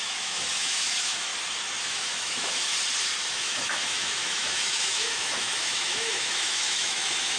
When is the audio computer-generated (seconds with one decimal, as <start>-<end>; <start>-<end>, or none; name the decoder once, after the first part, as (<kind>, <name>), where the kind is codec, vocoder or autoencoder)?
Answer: 0.0-1.3 (autoencoder, DAC-VAE); 1.8-2.7; 3.3-7.4